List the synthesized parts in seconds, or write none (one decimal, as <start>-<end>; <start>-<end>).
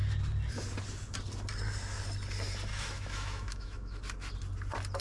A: 2.7-4.0